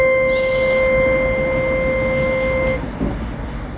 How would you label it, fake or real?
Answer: real